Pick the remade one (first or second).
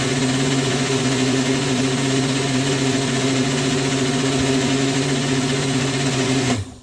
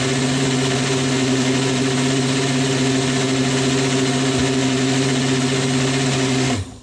first